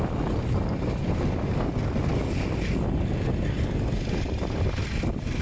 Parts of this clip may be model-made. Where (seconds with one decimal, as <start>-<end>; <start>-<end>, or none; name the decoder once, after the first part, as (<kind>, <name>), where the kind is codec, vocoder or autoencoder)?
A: none